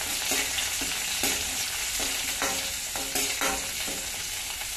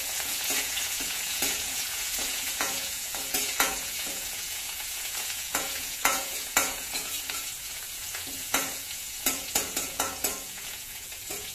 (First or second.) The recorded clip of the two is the first